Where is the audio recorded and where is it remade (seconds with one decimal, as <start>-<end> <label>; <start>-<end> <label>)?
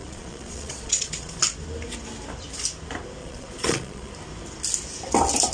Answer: 0.0-1.4 remade; 1.4-3.2 recorded; 3.2-4.1 remade; 4.1-5.5 recorded